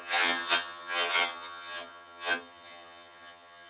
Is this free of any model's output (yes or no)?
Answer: no